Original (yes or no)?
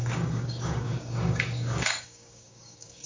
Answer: no